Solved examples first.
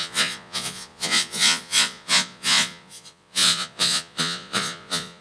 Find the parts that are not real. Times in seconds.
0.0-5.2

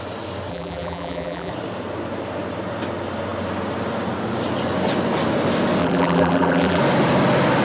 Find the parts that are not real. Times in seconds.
0.5-1.5; 5.8-6.8